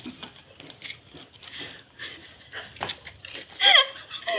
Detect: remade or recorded recorded